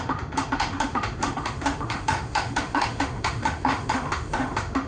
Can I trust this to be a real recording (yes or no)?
no